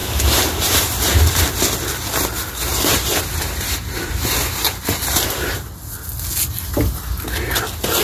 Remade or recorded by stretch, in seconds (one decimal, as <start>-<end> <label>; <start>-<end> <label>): 0.0-1.4 remade; 1.4-2.7 recorded; 2.7-5.7 remade; 5.7-8.0 recorded